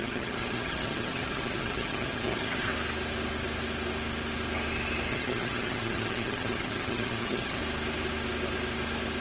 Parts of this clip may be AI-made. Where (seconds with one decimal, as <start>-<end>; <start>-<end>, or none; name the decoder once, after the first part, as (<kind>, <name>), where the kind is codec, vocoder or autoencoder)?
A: 0.0-2.7 (vocoder, HiFi-GAN); 5.1-7.6